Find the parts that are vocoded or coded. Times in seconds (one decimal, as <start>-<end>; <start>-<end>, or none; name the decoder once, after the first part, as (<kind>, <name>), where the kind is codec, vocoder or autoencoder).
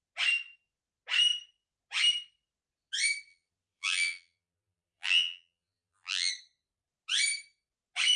3.3-6.3 (vocoder, BigVGAN v2)